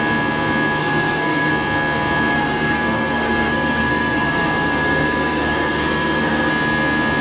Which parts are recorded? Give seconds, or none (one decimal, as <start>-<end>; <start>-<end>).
0.0-0.8; 1.5-2.3; 6.5-7.2